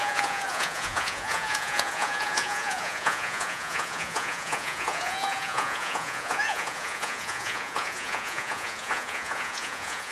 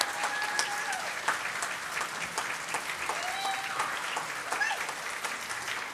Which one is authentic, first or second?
second